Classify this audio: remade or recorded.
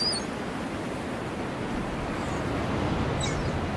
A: recorded